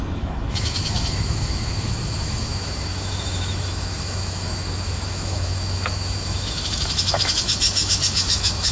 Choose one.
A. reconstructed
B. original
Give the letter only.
A